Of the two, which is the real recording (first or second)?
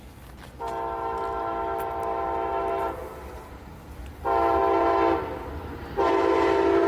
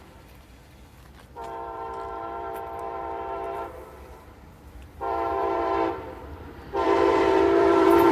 first